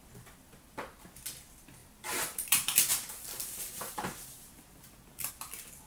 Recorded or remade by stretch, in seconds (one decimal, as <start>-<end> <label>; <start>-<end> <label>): 0.0-1.8 recorded; 1.8-5.3 remade; 5.3-5.9 recorded